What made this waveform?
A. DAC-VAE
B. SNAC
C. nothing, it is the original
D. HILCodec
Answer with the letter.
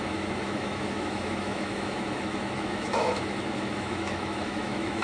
A